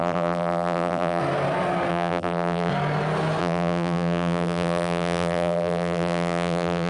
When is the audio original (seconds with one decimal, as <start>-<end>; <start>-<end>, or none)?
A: 1.2-1.9; 2.7-3.4